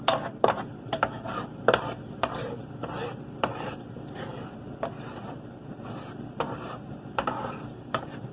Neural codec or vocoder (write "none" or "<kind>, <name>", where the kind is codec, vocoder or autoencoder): vocoder, BigVGAN v2